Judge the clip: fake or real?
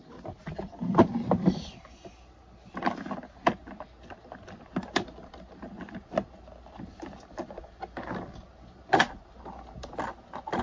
real